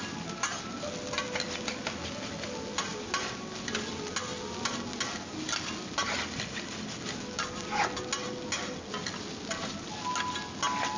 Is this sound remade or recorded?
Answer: recorded